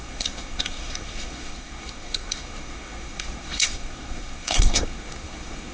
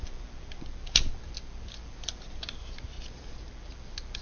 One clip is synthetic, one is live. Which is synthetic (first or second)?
first